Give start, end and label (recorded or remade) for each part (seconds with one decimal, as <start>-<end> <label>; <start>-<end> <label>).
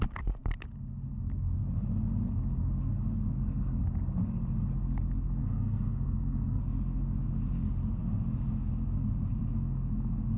0.0-5.4 recorded; 5.4-6.6 remade; 6.6-10.4 recorded